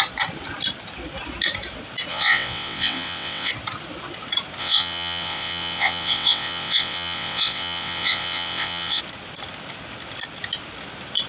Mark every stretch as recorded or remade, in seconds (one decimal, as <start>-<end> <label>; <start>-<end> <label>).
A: 0.0-2.1 recorded; 2.1-3.5 remade; 3.5-4.6 recorded; 4.6-9.0 remade; 9.0-11.3 recorded

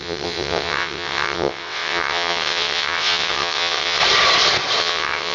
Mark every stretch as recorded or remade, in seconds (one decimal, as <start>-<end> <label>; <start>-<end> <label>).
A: 0.0-4.0 remade; 4.0-4.8 recorded; 4.8-5.3 remade

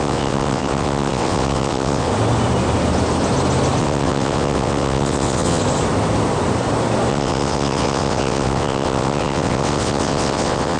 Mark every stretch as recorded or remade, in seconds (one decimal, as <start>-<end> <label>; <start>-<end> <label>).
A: 0.0-2.1 remade; 2.1-3.8 recorded; 3.8-5.6 remade; 5.6-7.1 recorded; 7.1-10.8 remade

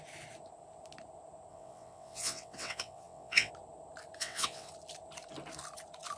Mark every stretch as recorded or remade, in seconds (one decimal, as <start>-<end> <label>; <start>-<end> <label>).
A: 0.0-1.5 recorded; 1.5-3.5 remade; 3.5-4.2 recorded; 4.2-4.7 remade; 4.7-6.2 recorded

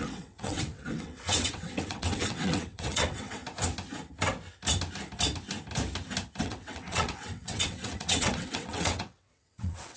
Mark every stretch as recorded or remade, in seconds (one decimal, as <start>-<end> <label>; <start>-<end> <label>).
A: 0.0-3.4 remade; 3.4-6.4 recorded; 6.4-10.0 remade

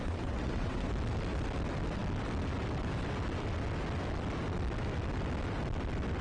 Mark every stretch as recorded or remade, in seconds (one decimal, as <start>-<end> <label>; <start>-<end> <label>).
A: 0.0-0.9 remade; 0.9-6.2 recorded

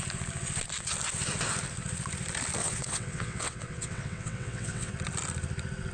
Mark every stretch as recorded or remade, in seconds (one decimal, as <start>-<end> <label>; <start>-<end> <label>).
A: 0.0-2.6 recorded; 2.6-4.9 remade; 4.9-5.9 recorded

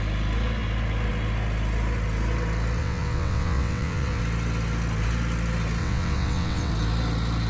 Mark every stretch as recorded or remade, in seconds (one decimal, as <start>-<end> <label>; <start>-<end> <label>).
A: 0.0-2.8 recorded; 2.8-4.2 remade; 4.2-5.8 recorded; 5.8-6.7 remade; 6.7-7.5 recorded